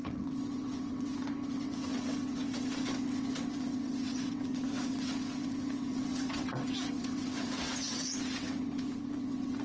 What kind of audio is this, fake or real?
fake